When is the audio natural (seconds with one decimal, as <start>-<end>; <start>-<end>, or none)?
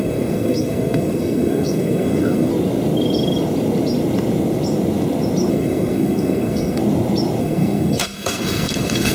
2.5-5.5; 6.8-7.4